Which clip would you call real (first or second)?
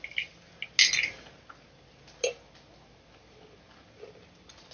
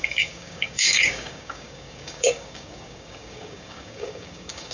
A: first